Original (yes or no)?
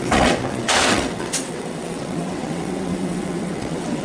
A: no